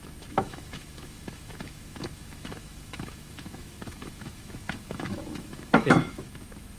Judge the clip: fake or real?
fake